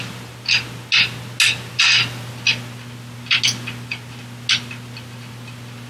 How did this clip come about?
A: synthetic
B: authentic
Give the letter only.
B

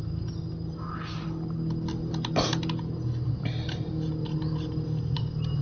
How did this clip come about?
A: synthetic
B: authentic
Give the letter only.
B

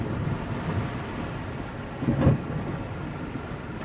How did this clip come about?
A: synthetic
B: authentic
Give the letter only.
B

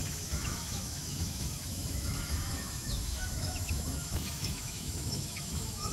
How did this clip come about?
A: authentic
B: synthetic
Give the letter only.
B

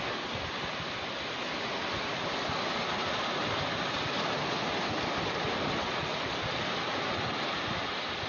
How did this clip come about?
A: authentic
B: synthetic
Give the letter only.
A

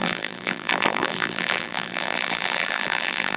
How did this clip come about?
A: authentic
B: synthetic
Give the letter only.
B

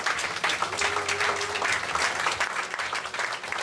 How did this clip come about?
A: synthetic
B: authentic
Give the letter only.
B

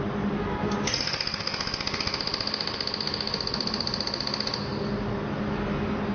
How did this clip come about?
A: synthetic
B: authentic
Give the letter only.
B